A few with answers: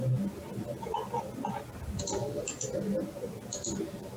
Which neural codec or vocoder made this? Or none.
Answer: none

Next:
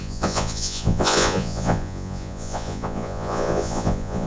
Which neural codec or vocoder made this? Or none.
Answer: vocoder, Vocos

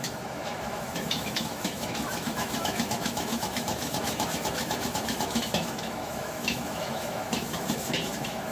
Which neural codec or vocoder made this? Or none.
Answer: autoencoder, DAC-VAE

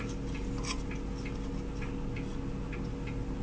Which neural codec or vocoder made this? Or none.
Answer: none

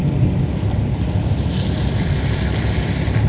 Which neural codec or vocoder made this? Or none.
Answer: none